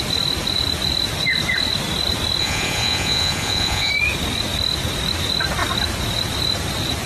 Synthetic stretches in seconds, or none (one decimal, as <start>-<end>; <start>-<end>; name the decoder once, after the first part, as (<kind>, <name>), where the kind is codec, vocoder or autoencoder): 2.4-3.9 (vocoder, Vocos)